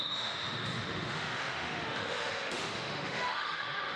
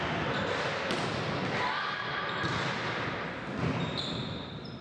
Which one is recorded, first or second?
second